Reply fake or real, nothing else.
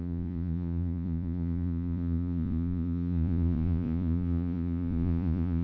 fake